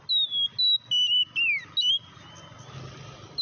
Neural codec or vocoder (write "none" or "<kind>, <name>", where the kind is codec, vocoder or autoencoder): none